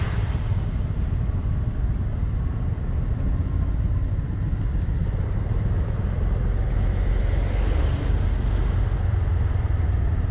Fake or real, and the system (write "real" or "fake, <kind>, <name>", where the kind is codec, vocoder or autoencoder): real